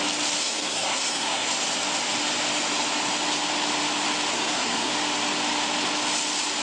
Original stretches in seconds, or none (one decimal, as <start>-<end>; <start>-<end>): 0.0-0.4; 1.5-4.3; 4.9-6.6